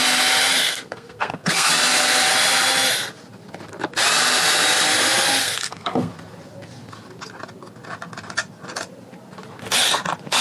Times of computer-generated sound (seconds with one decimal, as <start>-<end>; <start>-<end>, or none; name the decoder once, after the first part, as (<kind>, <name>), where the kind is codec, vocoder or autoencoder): 0.6-1.7 (codec, SNAC); 5.4-6.1